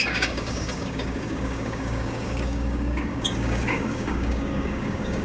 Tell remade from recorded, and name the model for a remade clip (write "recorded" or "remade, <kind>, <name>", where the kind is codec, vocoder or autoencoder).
remade, codec, DAC